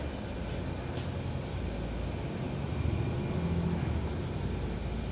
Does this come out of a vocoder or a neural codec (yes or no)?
no